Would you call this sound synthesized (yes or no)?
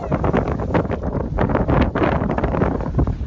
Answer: no